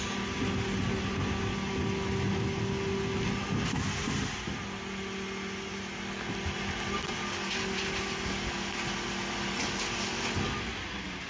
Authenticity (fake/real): real